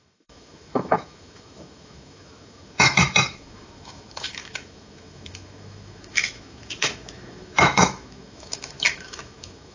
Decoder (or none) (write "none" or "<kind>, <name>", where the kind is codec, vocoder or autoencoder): autoencoder, DAC-VAE